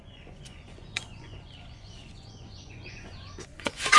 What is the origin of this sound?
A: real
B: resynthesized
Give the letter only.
B